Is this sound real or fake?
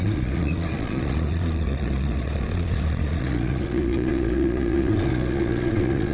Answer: fake